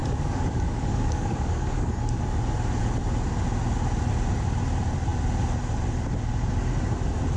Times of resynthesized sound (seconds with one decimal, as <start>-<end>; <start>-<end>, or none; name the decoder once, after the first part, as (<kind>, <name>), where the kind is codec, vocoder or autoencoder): 0.0-2.2 (codec, DAC)

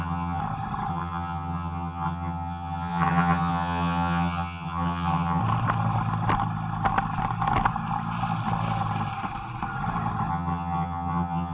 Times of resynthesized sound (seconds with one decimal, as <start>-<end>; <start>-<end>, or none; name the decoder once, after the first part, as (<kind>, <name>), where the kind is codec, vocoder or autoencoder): 0.0-0.4 (vocoder, HiFi-GAN); 0.9-5.4; 10.3-11.5

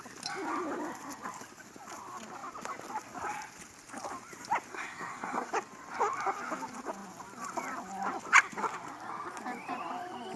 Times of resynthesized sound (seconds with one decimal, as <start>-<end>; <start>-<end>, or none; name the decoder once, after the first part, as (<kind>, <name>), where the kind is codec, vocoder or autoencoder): 4.7-5.5 (codec, SNAC)

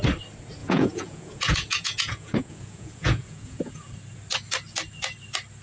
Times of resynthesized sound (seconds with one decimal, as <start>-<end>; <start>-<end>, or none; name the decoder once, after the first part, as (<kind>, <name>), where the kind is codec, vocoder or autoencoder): 0.6-3.9 (vocoder, Vocos)

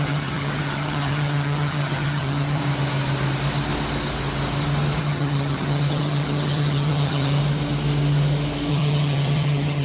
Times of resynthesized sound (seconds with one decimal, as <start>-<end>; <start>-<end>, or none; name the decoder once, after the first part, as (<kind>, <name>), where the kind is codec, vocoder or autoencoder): 0.0-2.6 (vocoder, HiFi-GAN); 5.0-7.4; 8.7-9.8

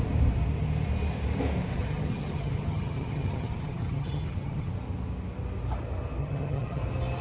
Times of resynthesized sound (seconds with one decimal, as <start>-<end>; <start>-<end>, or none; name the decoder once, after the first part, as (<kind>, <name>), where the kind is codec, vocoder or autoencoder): 1.7-4.7 (vocoder, HiFi-GAN); 6.2-6.8

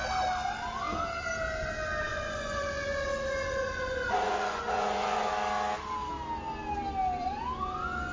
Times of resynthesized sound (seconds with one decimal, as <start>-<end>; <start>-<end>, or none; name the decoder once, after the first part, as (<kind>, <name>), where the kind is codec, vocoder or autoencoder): 2.1-5.3 (vocoder, Vocos)